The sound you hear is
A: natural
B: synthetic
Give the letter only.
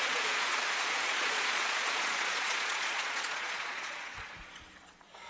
B